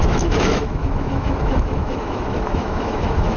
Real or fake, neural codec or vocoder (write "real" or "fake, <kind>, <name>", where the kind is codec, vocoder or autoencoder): fake, autoencoder, DAC-VAE